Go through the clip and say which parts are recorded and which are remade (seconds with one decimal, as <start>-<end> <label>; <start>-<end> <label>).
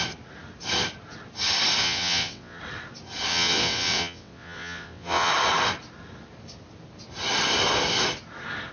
0.0-1.8 recorded; 1.8-2.6 remade; 2.6-3.3 recorded; 3.3-5.3 remade; 5.3-8.7 recorded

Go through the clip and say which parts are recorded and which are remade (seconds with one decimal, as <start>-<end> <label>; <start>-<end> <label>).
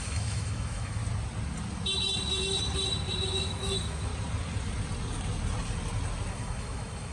0.0-1.0 remade; 1.0-3.3 recorded; 3.3-4.1 remade; 4.1-6.3 recorded; 6.3-7.1 remade